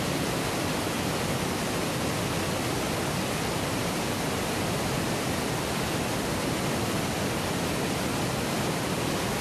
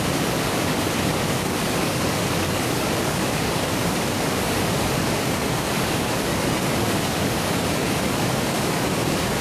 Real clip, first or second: first